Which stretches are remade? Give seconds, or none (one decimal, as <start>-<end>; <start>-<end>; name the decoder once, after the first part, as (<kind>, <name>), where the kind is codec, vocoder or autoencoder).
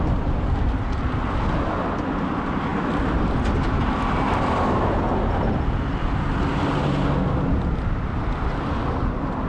none